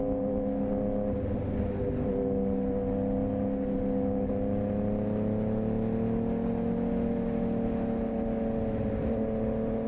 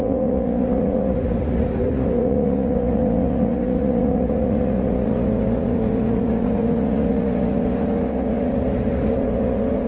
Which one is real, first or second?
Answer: first